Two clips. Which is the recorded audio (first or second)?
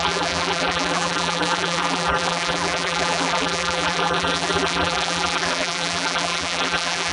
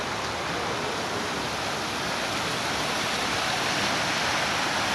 second